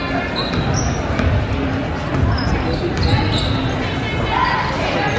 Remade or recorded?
recorded